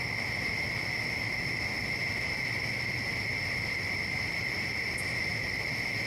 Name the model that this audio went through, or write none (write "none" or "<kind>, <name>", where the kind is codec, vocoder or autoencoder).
none